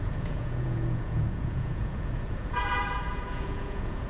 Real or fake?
fake